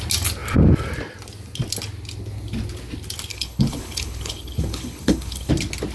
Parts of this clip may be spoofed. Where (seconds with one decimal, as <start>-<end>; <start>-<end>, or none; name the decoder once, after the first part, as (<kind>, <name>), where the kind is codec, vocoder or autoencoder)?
3.3-5.5 (codec, HILCodec)